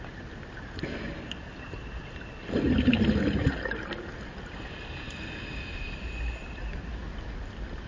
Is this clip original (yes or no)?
yes